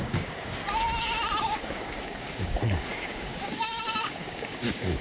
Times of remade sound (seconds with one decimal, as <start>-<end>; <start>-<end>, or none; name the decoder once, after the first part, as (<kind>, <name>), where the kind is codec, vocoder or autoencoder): 0.0-0.6 (codec, DAC); 1.4-5.0